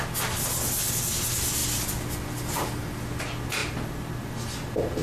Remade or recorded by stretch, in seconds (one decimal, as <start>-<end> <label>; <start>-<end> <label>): 0.0-5.0 recorded